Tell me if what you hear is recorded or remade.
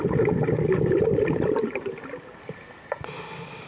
recorded